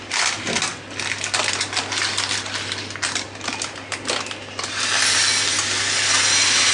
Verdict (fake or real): real